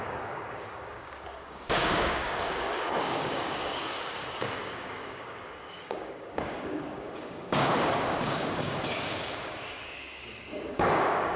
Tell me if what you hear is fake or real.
fake